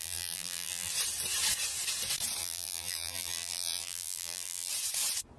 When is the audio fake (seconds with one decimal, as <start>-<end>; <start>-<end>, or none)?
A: 0.0-0.9; 2.4-4.7